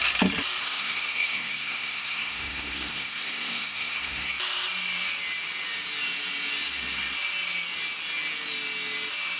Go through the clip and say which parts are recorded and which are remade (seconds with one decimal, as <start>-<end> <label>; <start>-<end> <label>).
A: 0.0-0.6 recorded; 0.6-4.3 remade; 4.3-9.4 recorded